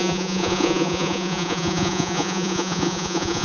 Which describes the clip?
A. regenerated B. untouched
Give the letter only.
A